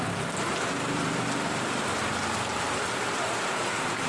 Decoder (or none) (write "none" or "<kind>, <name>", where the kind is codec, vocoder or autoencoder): none